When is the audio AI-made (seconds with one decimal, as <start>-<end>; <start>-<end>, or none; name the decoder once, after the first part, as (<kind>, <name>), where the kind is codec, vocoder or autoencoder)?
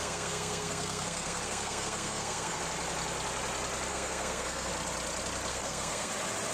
0.0-2.6 (codec, SNAC); 3.9-4.7; 5.5-6.1